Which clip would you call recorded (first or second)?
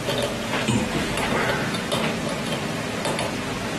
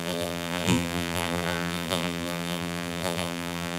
first